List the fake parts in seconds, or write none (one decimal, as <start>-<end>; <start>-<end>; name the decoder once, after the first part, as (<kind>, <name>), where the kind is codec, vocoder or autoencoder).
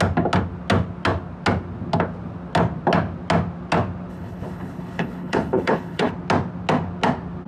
4.1-6.1 (codec, HILCodec)